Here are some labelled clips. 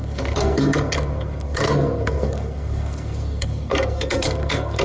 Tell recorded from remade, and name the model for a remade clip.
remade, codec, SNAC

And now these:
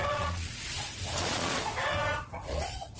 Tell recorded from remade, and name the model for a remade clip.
remade, vocoder, Vocos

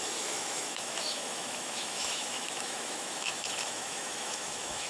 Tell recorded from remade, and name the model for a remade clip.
remade, autoencoder, DAC-VAE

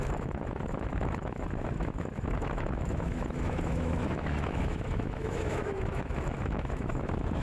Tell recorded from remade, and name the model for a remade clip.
remade, autoencoder, DAC-VAE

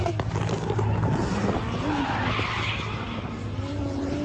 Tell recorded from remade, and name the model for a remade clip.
recorded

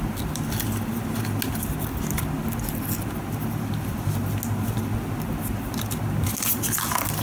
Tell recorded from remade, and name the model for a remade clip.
recorded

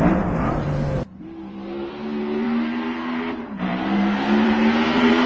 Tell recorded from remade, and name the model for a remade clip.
remade, vocoder, BigVGAN v2